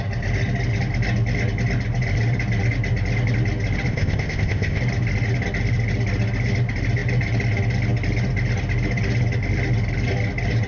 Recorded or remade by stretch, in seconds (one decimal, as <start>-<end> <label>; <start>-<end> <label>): 0.0-3.9 recorded; 3.9-4.8 remade; 4.8-10.7 recorded